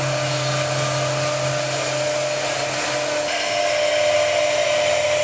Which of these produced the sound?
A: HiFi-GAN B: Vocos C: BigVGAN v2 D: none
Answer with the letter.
D